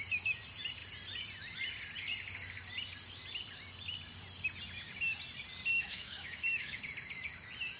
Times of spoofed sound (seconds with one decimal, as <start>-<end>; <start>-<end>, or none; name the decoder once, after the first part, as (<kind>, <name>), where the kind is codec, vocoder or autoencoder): 5.7-6.8 (autoencoder, DAC-VAE)